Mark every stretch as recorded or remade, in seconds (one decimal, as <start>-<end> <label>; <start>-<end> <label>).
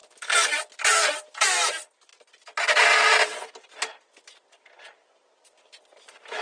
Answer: 0.0-6.4 recorded